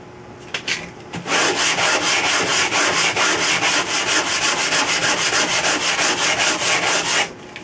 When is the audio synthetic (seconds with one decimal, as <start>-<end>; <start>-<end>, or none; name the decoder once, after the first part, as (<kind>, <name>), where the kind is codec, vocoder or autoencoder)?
none